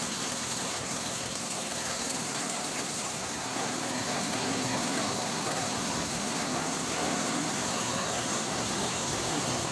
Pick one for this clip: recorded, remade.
remade